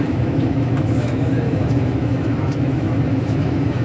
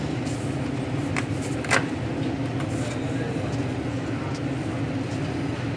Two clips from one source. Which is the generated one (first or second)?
first